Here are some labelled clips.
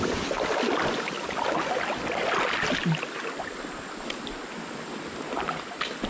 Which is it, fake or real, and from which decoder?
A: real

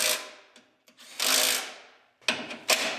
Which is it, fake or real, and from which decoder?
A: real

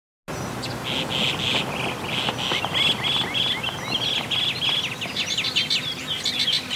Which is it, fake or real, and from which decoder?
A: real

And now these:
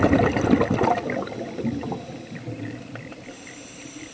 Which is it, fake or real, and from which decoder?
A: real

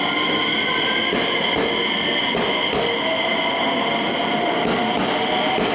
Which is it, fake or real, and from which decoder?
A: real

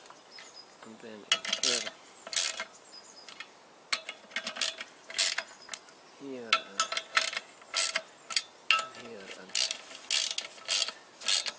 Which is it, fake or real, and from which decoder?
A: real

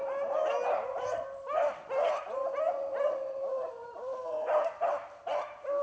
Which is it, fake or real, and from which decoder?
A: real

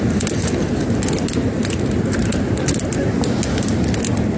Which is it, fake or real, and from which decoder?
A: real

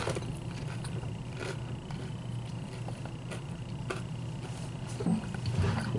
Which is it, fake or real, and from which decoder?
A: real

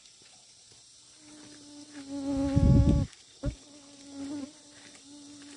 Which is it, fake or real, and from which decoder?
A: real